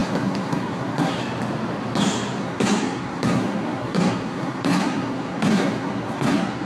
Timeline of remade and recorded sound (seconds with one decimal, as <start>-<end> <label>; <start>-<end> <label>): 0.0-1.2 remade; 1.2-2.4 recorded; 2.4-6.7 remade